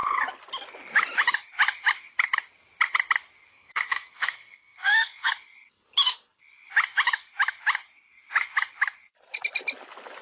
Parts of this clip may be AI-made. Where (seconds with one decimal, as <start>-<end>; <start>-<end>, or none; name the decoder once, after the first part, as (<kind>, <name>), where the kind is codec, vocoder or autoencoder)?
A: 3.5-5.3 (codec, SNAC)